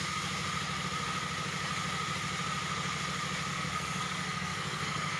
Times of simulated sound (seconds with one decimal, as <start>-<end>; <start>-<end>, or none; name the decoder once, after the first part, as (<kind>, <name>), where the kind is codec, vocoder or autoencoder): 3.5-5.2 (codec, SNAC)